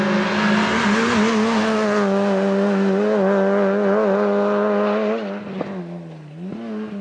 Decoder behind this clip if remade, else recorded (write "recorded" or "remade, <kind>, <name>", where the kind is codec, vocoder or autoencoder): recorded